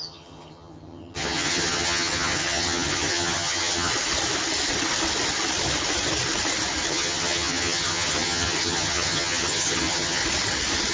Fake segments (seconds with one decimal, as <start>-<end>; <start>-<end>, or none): 0.0-3.9; 6.9-10.2